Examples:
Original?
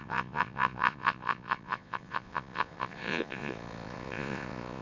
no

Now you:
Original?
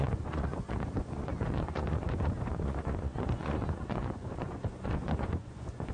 no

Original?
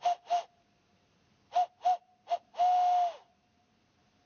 yes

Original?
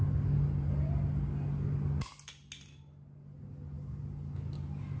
yes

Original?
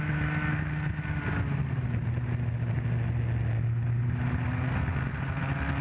yes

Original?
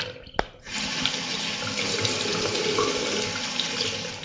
yes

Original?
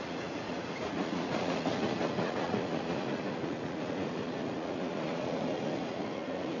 no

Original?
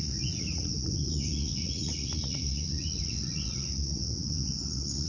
no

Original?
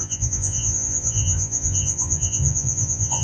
no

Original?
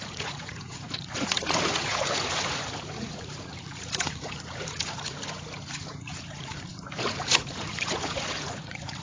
no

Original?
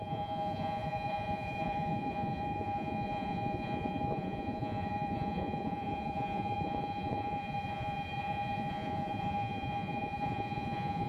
no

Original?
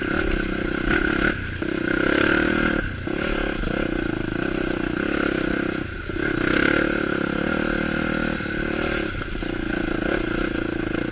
yes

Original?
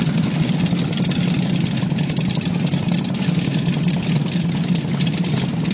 yes